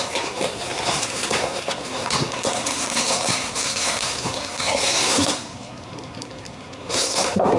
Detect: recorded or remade remade